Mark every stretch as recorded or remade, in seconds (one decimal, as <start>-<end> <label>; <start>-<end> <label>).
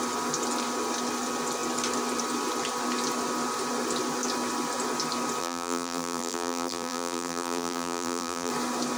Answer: 0.0-5.4 recorded; 5.4-8.5 remade; 8.5-9.0 recorded